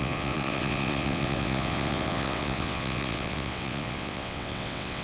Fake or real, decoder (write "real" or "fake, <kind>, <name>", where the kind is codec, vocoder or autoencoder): fake, vocoder, WaveNeXt